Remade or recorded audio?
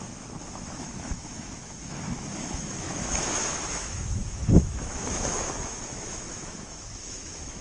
remade